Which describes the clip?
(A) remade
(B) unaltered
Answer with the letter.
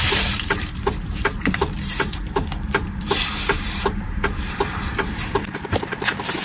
A